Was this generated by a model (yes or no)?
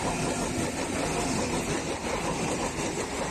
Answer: no